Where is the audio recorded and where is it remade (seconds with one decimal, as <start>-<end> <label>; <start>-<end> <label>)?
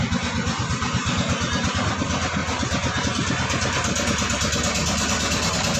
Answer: 0.0-1.0 recorded; 1.0-1.7 remade; 1.7-5.8 recorded